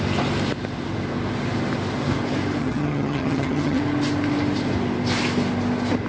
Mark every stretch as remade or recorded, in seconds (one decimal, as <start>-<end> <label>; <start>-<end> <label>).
0.0-2.6 recorded; 2.6-3.8 remade; 3.8-6.1 recorded